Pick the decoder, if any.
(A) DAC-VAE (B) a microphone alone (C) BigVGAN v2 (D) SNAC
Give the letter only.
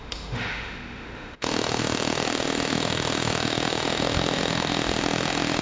A